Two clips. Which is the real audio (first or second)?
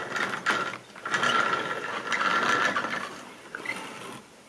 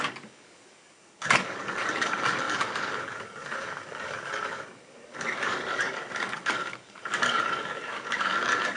first